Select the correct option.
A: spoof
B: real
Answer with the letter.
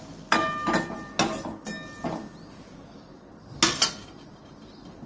B